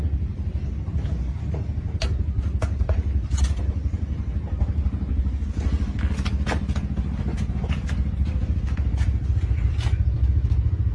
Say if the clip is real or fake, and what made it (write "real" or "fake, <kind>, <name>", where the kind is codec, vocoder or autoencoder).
real